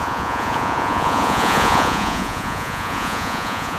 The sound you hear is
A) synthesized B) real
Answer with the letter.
A